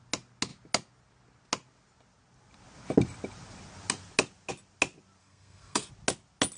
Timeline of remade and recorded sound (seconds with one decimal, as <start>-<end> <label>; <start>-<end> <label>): 0.0-5.2 recorded; 5.2-5.9 remade; 5.9-6.6 recorded